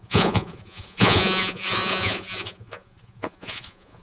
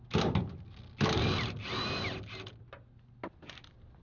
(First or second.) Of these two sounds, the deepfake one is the first